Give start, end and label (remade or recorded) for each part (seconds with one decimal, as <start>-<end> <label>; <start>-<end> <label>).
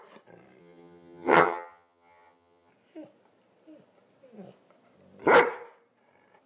0.0-0.6 recorded; 0.6-2.7 remade; 2.7-6.5 recorded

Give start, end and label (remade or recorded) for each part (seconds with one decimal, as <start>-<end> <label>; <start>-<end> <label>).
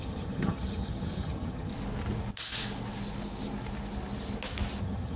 0.0-1.7 remade; 1.7-4.8 recorded; 4.8-5.2 remade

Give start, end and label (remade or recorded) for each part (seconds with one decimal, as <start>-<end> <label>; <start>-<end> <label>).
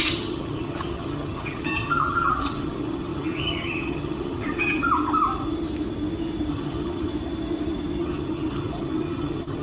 0.0-4.8 remade; 4.8-6.5 recorded; 6.5-7.1 remade; 7.1-8.0 recorded; 8.0-9.6 remade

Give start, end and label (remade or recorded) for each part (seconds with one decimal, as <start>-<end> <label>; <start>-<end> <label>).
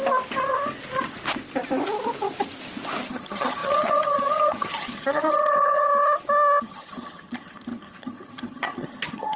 0.0-3.1 recorded; 3.1-5.9 remade; 5.9-6.6 recorded; 6.6-9.4 remade